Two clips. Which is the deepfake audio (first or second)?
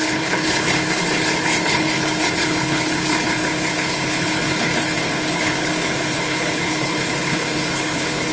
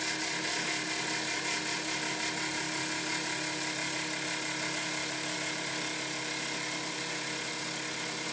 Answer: first